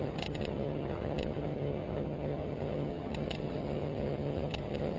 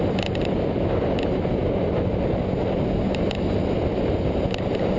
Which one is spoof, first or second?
first